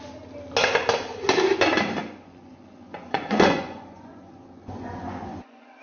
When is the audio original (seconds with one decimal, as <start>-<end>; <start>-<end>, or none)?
0.0-2.0